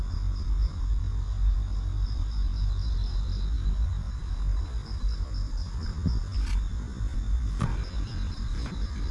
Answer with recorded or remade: recorded